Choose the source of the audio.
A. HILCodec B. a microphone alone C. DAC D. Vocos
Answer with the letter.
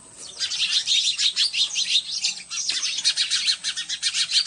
B